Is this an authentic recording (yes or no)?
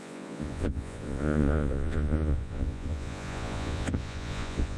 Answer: no